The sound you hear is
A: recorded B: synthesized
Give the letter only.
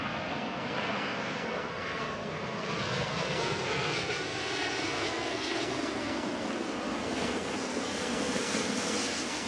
B